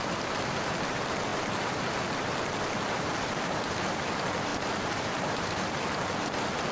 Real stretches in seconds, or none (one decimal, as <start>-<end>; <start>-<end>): 0.0-6.7